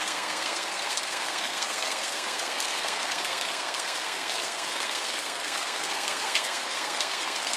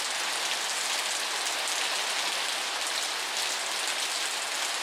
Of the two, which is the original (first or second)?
second